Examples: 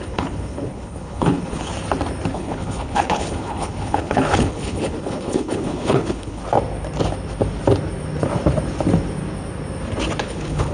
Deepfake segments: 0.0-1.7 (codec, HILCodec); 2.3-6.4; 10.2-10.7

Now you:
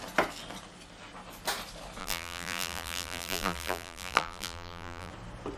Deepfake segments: 2.0-5.1 (vocoder, BigVGAN v2)

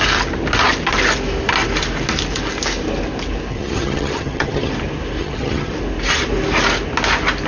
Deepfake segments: 3.5-4.7 (vocoder, HiFi-GAN); 5.2-5.7

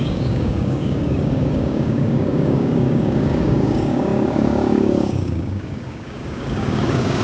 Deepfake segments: 0.0-7.2 (codec, DAC)